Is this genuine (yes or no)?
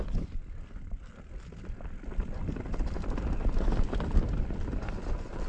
yes